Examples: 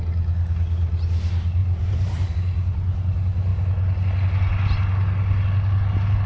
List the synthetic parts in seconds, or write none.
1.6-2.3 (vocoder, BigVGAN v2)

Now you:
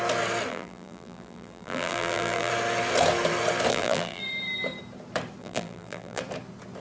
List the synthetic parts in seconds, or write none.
0.5-2.5 (vocoder, BigVGAN v2); 3.7-4.2; 5.4-6.2

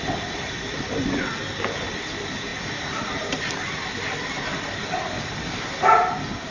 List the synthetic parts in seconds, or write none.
0.0-6.5 (vocoder, BigVGAN v2)

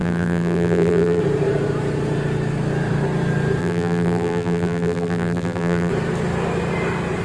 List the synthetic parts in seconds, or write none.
0.0-1.2 (vocoder, BigVGAN v2); 3.6-5.9

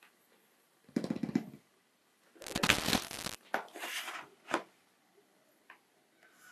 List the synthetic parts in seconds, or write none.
none

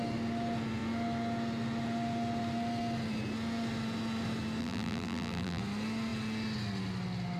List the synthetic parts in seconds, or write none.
4.6-5.6 (vocoder, BigVGAN v2)

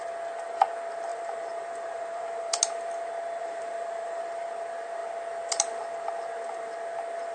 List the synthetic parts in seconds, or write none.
1.1-2.6 (vocoder, BigVGAN v2); 3.4-4.2